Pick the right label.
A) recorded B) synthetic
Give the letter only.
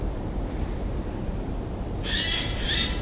A